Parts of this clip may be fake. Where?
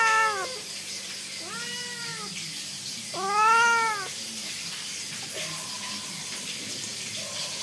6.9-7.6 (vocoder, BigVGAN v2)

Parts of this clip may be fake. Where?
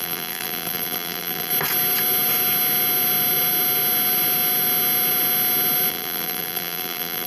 0.0-1.5 (vocoder, BigVGAN v2); 5.9-7.3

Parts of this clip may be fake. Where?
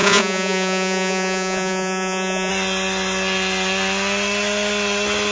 0.0-2.5 (vocoder, Vocos)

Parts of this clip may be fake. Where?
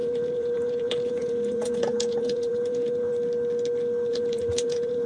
0.0-3.1 (vocoder, Vocos); 4.1-5.1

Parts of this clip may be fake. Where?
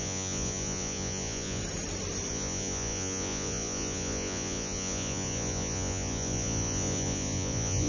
0.0-1.6 (vocoder, Vocos); 2.3-7.9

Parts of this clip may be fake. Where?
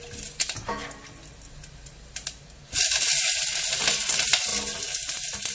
none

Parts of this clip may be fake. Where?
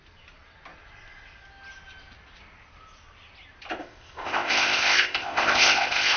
3.8-6.2 (codec, ZipCodec)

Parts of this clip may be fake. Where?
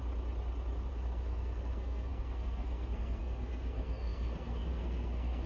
0.9-5.5 (codec, SNAC)